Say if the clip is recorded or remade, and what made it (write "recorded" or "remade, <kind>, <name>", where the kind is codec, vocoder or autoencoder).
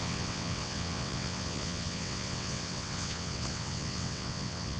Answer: remade, vocoder, WaveNeXt